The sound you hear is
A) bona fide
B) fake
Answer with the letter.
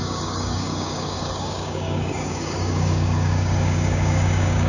B